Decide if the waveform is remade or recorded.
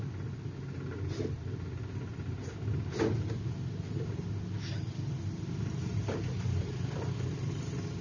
recorded